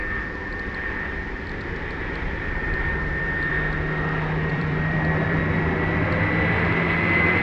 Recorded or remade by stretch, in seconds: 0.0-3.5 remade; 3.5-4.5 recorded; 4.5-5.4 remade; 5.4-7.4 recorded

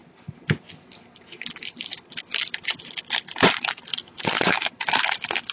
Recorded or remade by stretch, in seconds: 0.0-3.9 recorded; 3.9-4.7 remade; 4.7-5.5 recorded

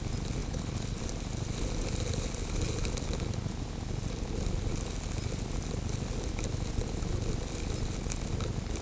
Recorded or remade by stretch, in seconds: 0.0-0.4 recorded; 0.4-1.0 remade; 1.0-8.8 recorded

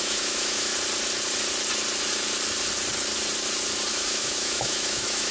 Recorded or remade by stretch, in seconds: 0.0-0.7 remade; 0.7-3.9 recorded; 3.9-5.3 remade